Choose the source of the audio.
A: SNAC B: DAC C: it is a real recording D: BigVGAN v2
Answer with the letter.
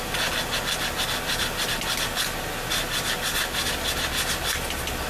C